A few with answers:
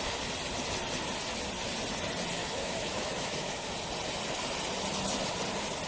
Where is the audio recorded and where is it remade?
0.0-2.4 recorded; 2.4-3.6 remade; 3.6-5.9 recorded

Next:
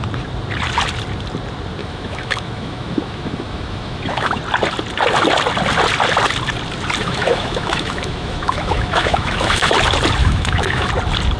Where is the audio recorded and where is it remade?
0.0-1.8 recorded; 1.8-4.4 remade; 4.4-7.0 recorded; 7.0-9.7 remade; 9.7-10.2 recorded; 10.2-10.9 remade; 10.9-11.4 recorded

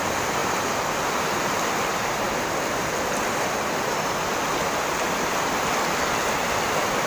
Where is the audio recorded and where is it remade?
0.0-7.1 recorded

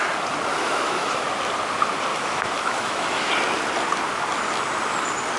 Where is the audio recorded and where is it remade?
0.0-0.6 recorded; 0.6-1.2 remade; 1.2-2.1 recorded; 2.1-3.3 remade; 3.3-5.4 recorded

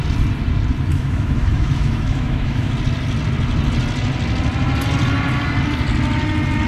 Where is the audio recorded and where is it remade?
0.0-0.9 recorded; 0.9-2.7 remade; 2.7-6.7 recorded

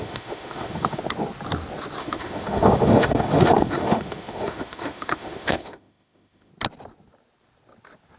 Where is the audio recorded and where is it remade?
0.0-1.0 remade; 1.0-2.0 recorded; 2.0-6.5 remade; 6.5-8.2 recorded

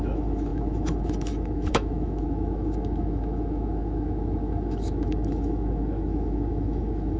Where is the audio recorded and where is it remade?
0.0-7.2 remade

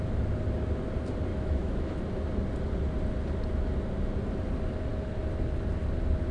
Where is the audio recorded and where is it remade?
0.0-1.3 recorded; 1.3-2.0 remade; 2.0-6.3 recorded